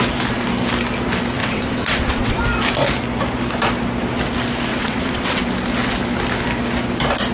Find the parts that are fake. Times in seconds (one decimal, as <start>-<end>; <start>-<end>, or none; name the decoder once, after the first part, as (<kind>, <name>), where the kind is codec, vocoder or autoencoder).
1.4-2.4 (vocoder, WaveNeXt); 4.7-5.4